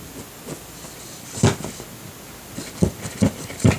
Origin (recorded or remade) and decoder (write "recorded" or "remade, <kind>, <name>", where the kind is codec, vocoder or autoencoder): recorded